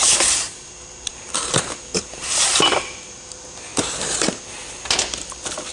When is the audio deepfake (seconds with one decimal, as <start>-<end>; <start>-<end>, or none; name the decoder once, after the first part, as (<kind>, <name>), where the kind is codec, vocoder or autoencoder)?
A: 0.0-3.7 (vocoder, BigVGAN v2)